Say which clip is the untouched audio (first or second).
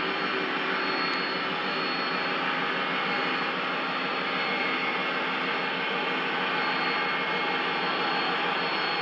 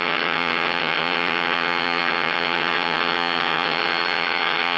first